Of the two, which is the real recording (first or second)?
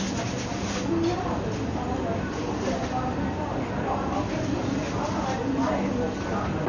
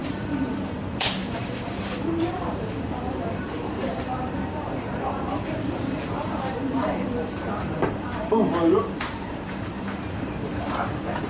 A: first